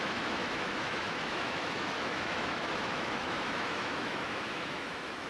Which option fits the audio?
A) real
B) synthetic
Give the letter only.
B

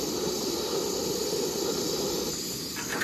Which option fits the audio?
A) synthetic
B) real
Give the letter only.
B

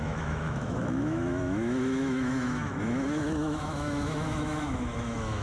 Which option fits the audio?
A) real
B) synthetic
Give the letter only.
B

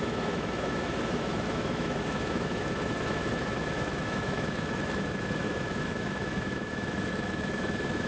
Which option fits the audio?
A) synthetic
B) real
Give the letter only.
A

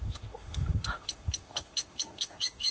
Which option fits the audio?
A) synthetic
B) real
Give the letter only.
A